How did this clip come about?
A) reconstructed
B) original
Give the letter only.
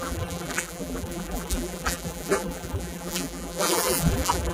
A